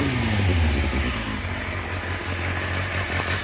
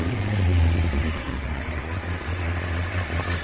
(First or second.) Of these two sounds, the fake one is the second